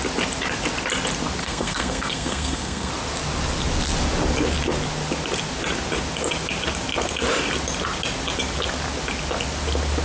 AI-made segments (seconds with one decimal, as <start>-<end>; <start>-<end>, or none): 1.4-2.9